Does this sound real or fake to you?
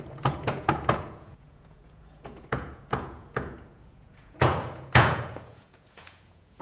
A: fake